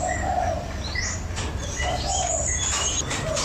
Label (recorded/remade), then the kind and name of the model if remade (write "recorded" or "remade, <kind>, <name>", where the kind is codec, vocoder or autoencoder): recorded